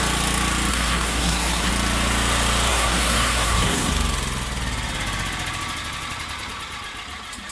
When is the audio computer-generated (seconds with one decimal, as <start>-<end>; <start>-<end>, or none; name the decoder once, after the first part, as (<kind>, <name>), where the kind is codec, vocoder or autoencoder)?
0.7-1.7 (codec, SNAC); 2.7-3.9